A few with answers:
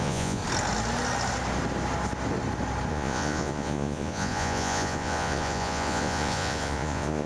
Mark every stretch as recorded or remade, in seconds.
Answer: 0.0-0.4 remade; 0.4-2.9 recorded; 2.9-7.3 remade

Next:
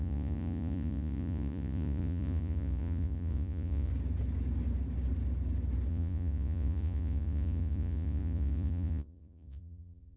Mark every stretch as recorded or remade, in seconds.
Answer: 0.0-3.9 remade; 3.9-5.9 recorded; 5.9-10.2 remade

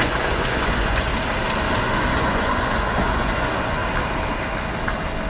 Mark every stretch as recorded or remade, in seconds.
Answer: 0.0-1.1 remade; 1.1-1.8 recorded; 1.8-3.8 remade; 3.8-5.3 recorded

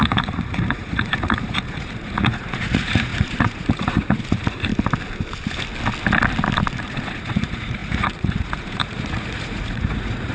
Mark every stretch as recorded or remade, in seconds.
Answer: 0.0-4.7 remade; 4.7-6.8 recorded; 6.8-10.3 remade

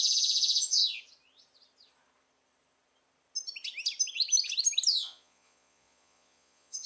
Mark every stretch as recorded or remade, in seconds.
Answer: 0.0-0.8 remade; 0.8-4.9 recorded; 4.9-6.9 remade

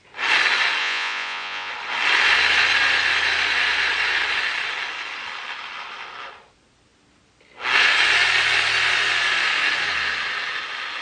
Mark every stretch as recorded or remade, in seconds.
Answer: 0.0-0.8 recorded; 0.8-1.7 remade; 1.7-11.0 recorded